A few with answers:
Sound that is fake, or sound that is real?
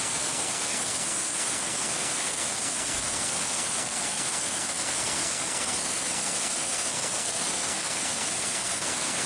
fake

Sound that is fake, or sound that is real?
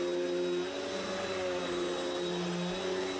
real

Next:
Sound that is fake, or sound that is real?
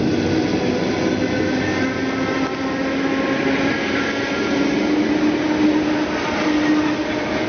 real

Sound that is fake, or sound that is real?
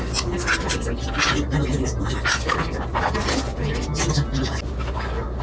real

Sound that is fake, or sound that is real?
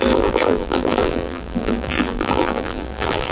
fake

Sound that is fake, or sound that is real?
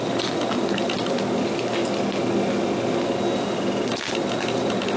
real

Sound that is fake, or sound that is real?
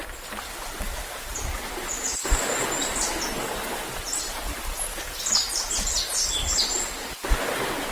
real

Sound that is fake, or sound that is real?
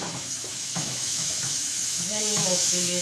fake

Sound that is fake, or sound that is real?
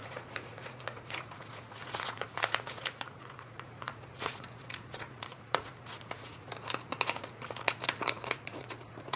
fake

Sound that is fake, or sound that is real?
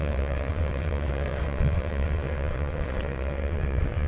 fake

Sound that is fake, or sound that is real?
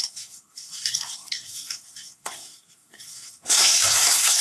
fake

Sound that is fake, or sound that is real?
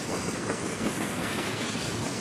fake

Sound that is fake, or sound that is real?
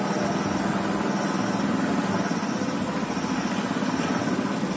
real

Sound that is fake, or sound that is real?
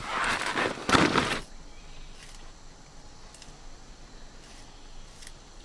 real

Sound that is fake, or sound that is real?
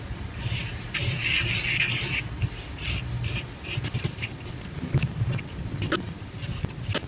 real